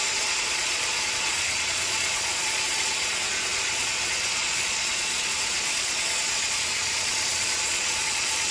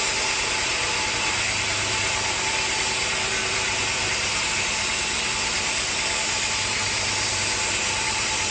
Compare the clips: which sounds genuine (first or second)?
second